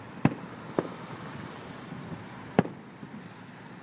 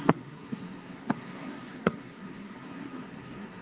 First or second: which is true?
first